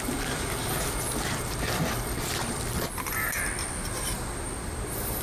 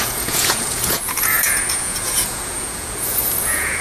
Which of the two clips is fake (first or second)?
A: second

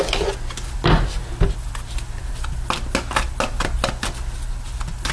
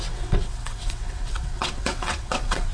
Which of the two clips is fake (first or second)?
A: second